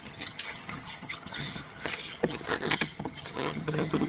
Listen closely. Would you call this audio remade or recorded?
remade